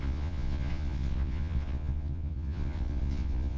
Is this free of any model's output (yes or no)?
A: no